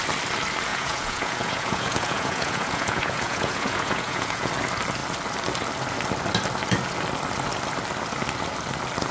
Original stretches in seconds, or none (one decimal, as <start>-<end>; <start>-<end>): 0.0-0.7; 4.5-9.1